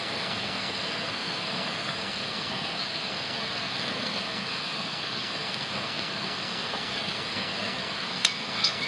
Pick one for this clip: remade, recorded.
remade